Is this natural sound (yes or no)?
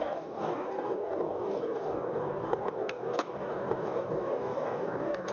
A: no